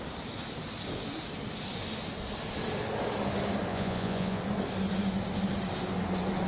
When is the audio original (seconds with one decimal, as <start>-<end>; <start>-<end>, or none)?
0.0-3.7; 4.4-6.5